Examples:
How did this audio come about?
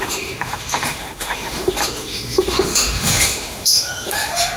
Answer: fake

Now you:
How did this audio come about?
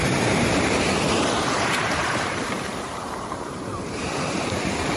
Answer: fake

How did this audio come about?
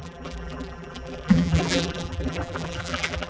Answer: fake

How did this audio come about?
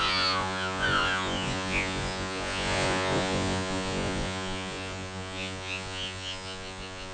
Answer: fake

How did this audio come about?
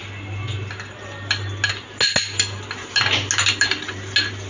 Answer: real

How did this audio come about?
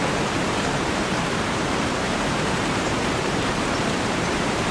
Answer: fake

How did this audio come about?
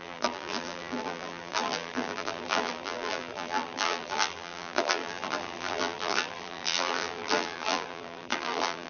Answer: fake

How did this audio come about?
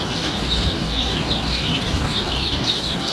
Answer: fake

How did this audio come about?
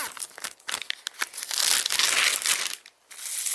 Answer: real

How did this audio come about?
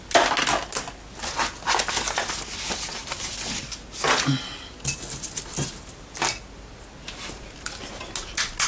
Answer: real